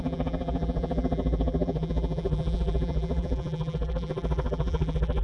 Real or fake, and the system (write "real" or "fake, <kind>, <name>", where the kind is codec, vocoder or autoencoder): fake, vocoder, BigVGAN v2